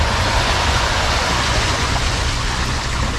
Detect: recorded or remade remade